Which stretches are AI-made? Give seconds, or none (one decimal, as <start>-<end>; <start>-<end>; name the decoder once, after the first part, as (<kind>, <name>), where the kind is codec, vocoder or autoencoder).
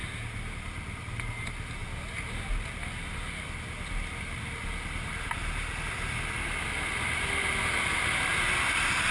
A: none